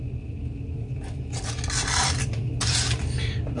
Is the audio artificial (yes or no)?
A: no